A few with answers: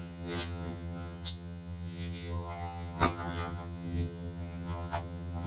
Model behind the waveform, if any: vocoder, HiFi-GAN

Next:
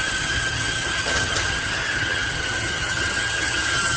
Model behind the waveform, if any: vocoder, HiFi-GAN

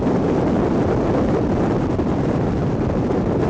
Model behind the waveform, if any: none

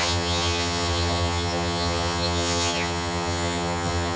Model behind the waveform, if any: vocoder, HiFi-GAN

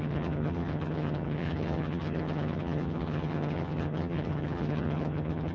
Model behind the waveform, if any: vocoder, HiFi-GAN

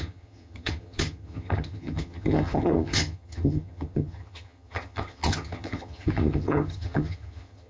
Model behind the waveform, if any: vocoder, HiFi-GAN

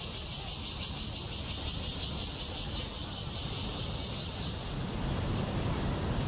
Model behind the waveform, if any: none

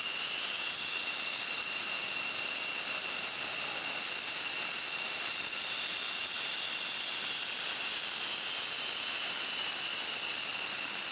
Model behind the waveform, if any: none